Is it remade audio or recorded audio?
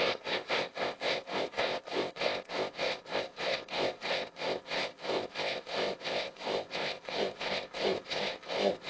remade